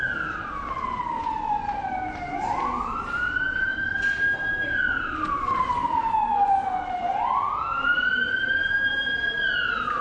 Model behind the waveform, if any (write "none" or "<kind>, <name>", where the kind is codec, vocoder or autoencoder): none